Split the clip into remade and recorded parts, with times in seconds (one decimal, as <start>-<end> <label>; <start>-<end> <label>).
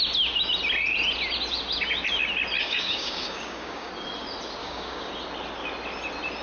0.0-2.6 recorded; 2.6-3.9 remade; 3.9-4.6 recorded; 4.6-5.1 remade; 5.1-6.4 recorded